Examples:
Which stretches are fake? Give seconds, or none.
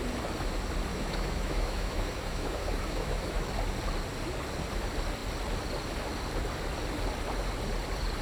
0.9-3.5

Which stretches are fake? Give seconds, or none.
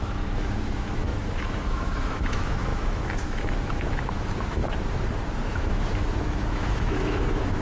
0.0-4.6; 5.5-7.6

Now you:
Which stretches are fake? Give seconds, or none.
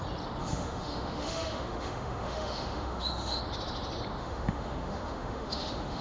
0.4-3.4; 4.2-6.0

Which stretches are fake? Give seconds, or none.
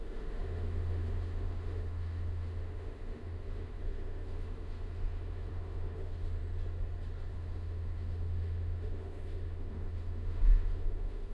0.0-6.4; 7.3-11.3